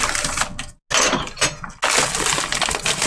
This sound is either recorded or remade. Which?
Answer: recorded